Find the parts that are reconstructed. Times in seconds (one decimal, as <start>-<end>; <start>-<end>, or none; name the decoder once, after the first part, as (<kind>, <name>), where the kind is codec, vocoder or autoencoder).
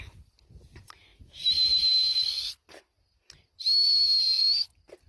none